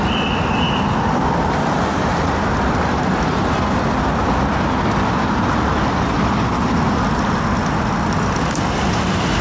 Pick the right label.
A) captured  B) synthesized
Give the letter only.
A